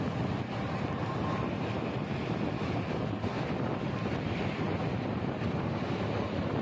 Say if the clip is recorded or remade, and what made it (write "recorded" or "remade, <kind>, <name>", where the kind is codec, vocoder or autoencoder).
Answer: recorded